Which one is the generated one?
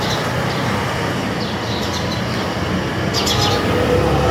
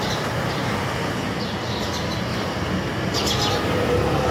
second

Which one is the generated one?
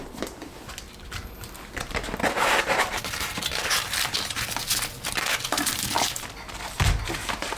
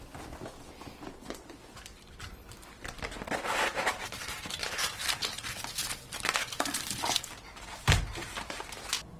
second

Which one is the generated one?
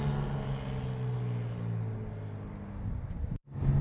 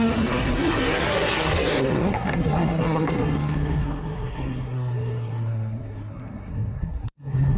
second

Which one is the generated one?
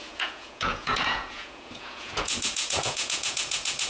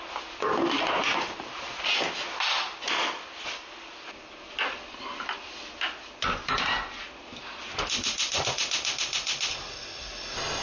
first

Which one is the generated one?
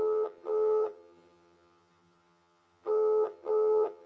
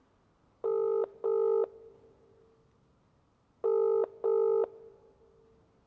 first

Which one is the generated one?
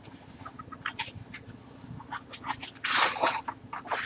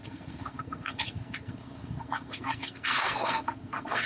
second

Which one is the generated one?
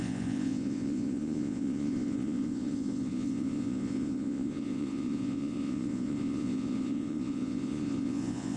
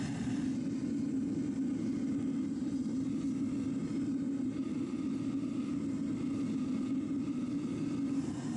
first